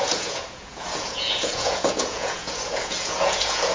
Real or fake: fake